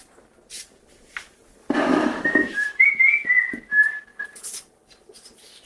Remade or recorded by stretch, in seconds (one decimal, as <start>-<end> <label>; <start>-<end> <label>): 0.0-1.9 recorded; 1.9-2.9 remade; 2.9-5.7 recorded